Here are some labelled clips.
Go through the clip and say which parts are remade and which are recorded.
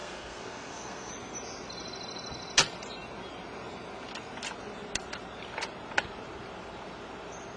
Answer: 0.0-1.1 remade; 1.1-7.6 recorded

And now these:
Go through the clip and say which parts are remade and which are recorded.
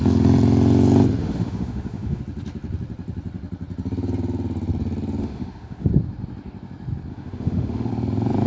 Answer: 0.0-1.2 recorded; 1.2-2.2 remade; 2.2-5.2 recorded; 5.2-5.9 remade; 5.9-7.1 recorded; 7.1-7.9 remade; 7.9-8.5 recorded